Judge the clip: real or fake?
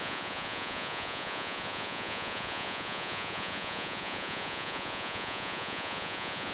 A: fake